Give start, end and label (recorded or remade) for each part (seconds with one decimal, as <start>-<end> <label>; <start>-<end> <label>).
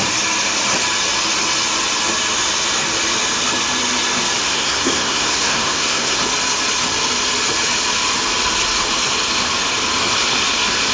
0.0-4.4 recorded; 4.4-6.2 remade; 6.2-10.9 recorded